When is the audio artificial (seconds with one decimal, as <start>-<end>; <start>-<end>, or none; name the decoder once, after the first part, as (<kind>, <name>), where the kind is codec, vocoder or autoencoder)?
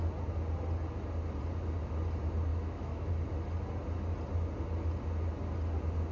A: 2.5-3.1 (autoencoder, DAC-VAE)